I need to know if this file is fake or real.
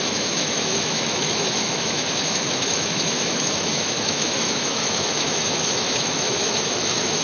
fake